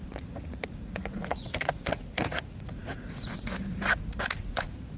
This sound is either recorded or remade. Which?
remade